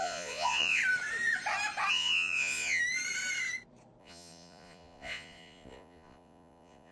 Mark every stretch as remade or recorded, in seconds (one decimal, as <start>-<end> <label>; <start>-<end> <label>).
0.0-0.8 remade; 0.8-1.9 recorded; 1.9-2.8 remade; 2.8-4.0 recorded; 4.0-6.9 remade